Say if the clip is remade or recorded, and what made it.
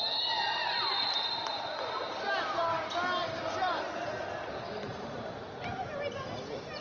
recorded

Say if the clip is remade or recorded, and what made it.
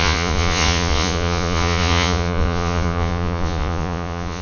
remade, vocoder, Vocos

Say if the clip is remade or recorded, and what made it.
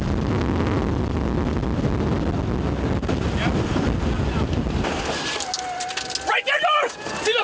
recorded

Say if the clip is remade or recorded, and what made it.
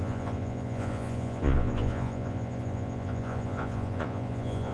remade, vocoder, Vocos